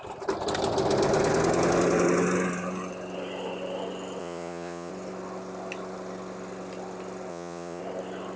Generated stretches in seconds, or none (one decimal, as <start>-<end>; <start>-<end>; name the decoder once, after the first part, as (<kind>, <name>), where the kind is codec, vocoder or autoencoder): 4.2-4.9 (vocoder, Vocos); 7.3-7.8